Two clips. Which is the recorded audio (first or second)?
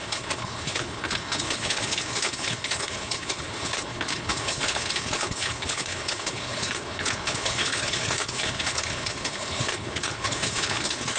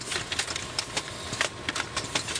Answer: second